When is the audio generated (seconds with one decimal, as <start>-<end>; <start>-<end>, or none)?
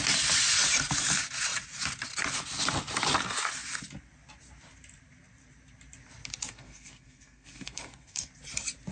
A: 6.5-8.3